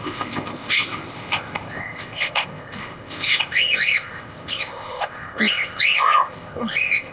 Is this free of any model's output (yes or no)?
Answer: no